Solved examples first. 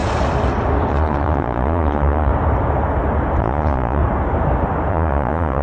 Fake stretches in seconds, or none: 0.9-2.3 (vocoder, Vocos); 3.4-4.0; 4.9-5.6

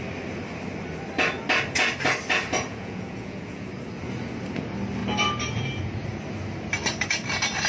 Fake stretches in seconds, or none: 2.7-3.7 (vocoder, Vocos)

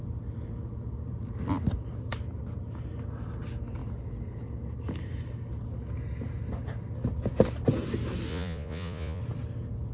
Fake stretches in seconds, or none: 8.3-9.2 (vocoder, Vocos)

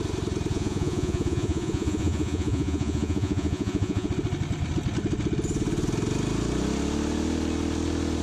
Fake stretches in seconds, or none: 0.5-4.1 (vocoder, Vocos)

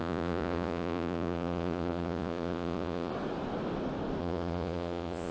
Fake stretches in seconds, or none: 0.0-3.1 (vocoder, Vocos); 4.2-5.3

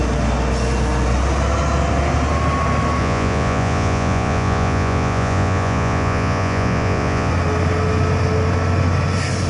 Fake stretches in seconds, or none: 3.0-7.3 (vocoder, Vocos)

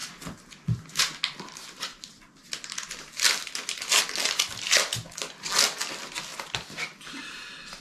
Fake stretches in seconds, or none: none